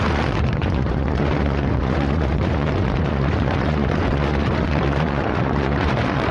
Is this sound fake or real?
fake